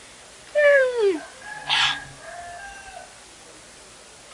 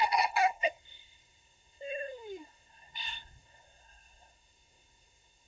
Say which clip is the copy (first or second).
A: second